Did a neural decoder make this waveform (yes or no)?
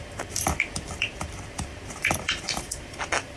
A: yes